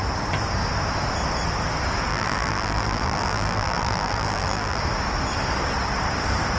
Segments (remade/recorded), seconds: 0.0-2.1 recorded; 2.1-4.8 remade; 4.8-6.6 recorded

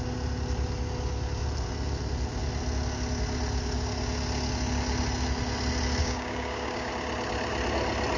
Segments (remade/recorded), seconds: 0.0-6.0 recorded; 6.0-6.9 remade; 6.9-8.2 recorded

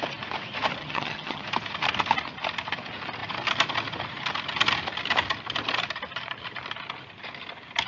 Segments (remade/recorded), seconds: 0.0-0.8 recorded; 0.8-1.4 remade; 1.4-7.9 recorded

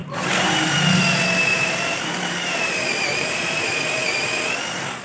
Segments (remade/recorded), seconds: 0.0-1.5 recorded; 1.5-4.3 remade; 4.3-5.0 recorded

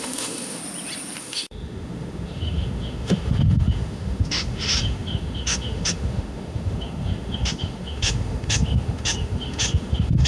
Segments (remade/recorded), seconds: 0.0-0.6 remade; 0.6-1.2 recorded; 1.2-10.3 remade